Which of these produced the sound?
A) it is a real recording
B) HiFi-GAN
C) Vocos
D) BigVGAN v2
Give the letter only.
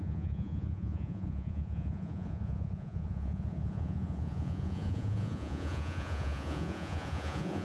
C